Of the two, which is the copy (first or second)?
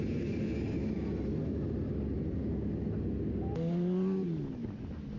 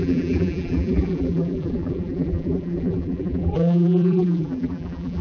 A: second